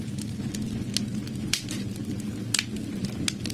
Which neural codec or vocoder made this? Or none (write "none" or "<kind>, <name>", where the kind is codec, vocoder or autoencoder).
none